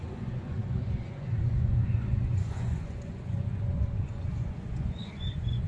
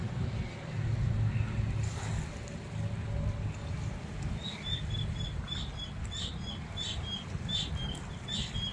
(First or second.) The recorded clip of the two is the second